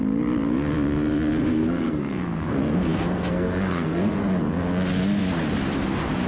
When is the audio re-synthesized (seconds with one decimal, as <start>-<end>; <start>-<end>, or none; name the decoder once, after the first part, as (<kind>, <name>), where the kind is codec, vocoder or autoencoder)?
1.4-4.1 (codec, SNAC)